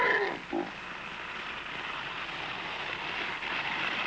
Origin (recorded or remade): recorded